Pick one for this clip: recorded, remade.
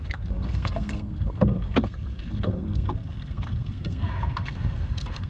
remade